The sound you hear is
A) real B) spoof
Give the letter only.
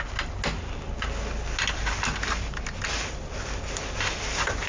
A